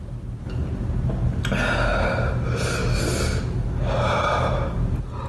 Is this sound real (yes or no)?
yes